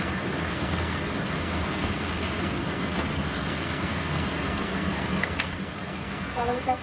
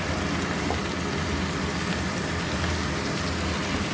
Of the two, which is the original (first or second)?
second